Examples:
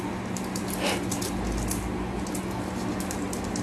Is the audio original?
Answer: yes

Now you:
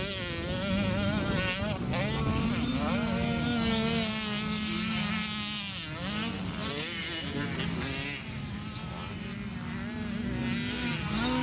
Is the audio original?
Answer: yes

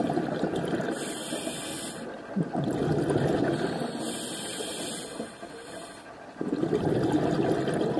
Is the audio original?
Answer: yes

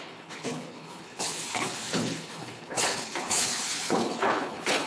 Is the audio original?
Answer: no